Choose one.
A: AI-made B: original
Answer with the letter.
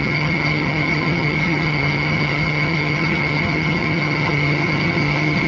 A